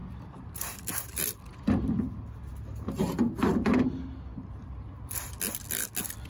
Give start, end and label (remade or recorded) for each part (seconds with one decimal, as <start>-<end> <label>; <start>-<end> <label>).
0.0-1.4 remade; 1.4-6.3 recorded